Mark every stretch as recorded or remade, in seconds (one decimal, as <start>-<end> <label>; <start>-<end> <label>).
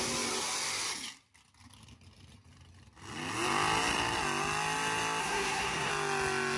0.0-5.2 recorded; 5.2-5.9 remade; 5.9-6.6 recorded